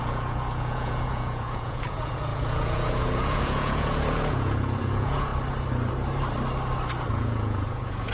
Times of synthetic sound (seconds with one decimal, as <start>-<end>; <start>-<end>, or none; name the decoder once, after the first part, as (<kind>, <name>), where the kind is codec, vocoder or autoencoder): 0.0-5.3 (vocoder, Vocos); 7.1-8.1